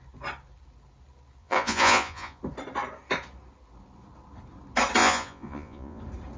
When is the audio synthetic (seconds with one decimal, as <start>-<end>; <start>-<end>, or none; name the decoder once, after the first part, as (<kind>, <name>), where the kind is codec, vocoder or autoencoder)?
1.4-2.4 (vocoder, Vocos); 5.0-6.0